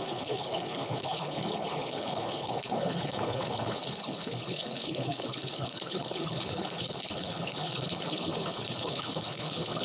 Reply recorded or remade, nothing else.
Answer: remade